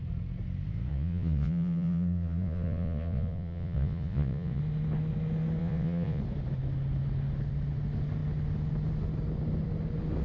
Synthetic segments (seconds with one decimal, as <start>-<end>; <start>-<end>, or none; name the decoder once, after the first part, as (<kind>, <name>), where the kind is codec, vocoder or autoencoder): 0.9-4.6 (vocoder, Vocos); 5.6-6.2